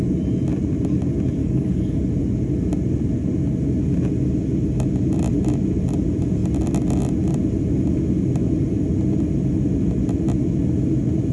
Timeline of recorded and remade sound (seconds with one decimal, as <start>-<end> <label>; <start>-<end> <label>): 0.0-1.4 recorded; 1.4-2.0 remade; 2.0-11.3 recorded